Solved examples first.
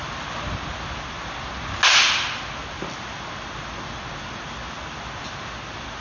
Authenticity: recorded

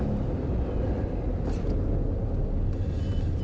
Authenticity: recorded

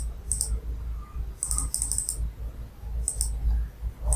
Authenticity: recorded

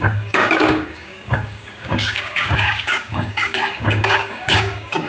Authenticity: remade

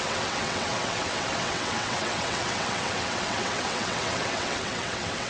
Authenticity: remade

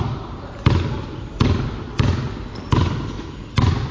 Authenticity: recorded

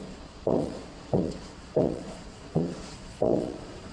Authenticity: remade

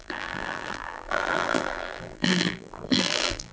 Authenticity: remade